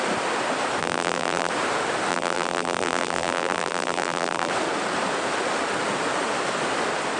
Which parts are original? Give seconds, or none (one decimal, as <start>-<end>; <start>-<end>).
0.0-0.8; 1.5-2.1; 4.5-7.2